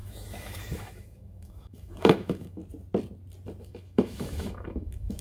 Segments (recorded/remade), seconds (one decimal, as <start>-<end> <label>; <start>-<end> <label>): 0.0-2.6 remade; 2.6-3.6 recorded; 3.6-5.2 remade